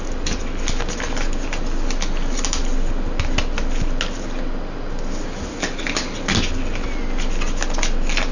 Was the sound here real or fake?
real